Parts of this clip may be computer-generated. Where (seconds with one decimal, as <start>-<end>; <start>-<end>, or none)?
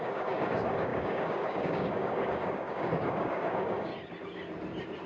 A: 0.0-3.9